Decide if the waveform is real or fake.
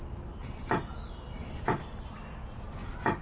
real